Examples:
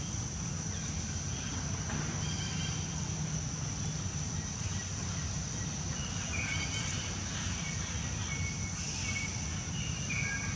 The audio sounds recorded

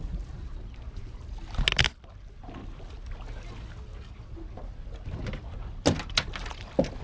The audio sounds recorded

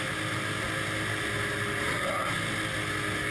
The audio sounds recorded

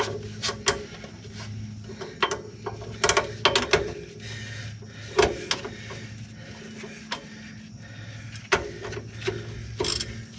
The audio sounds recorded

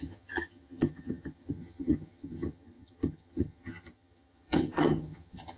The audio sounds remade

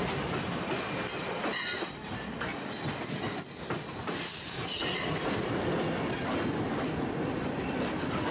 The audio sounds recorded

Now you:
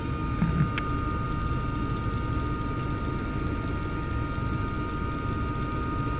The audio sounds recorded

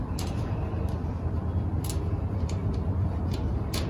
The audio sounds recorded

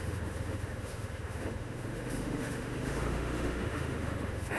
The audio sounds remade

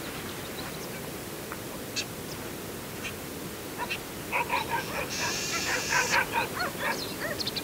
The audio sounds recorded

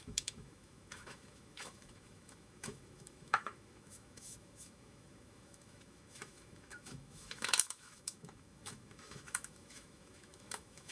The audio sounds remade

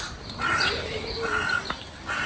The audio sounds recorded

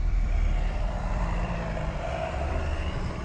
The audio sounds remade